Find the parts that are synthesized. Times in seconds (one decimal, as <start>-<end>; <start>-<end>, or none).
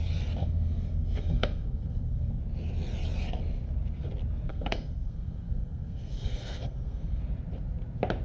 0.4-2.4; 4.5-7.2